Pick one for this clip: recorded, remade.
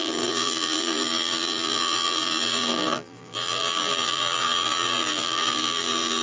remade